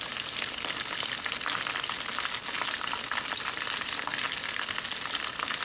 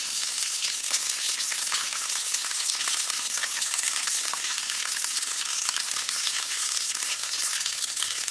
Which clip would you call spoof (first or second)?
second